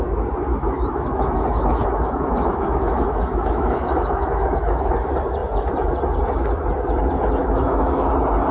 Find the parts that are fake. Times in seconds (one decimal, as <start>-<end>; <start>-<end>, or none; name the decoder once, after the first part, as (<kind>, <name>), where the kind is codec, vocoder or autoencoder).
0.5-4.9 (autoencoder, DAC-VAE); 7.4-8.1